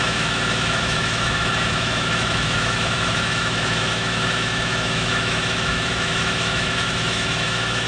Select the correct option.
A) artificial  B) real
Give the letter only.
A